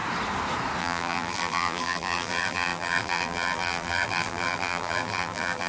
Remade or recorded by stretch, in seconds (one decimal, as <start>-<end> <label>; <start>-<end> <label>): 0.0-0.8 recorded; 0.8-5.7 remade